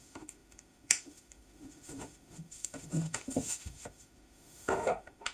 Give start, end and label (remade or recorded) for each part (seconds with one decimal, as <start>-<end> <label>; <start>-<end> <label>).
0.0-5.3 remade